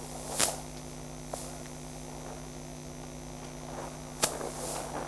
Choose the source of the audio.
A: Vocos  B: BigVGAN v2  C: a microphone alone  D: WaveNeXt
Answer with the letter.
C